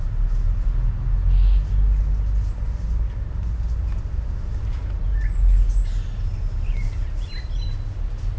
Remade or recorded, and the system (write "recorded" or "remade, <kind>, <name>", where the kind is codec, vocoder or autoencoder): recorded